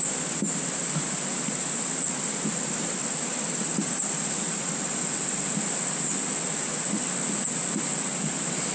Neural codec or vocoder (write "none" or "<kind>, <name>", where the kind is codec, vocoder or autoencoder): none